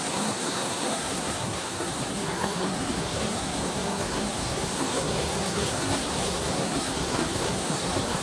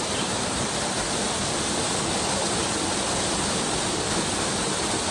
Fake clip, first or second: first